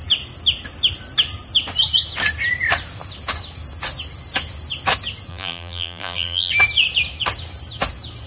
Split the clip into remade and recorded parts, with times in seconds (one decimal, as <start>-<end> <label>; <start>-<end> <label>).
0.0-5.3 recorded; 5.3-6.5 remade; 6.5-8.3 recorded